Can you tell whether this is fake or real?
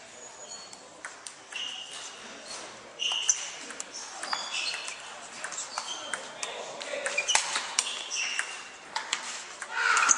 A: fake